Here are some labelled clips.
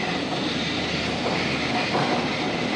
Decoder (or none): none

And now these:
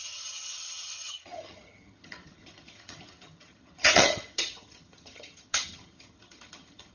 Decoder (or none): vocoder, HiFi-GAN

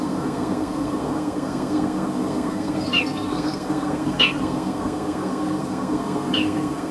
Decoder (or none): codec, SNAC